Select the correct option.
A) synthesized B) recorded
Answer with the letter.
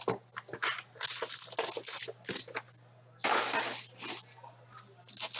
B